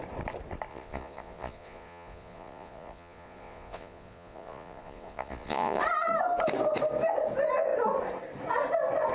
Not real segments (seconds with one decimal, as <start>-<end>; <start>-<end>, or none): 0.7-5.8